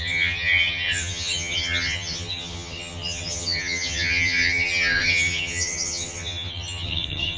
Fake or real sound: fake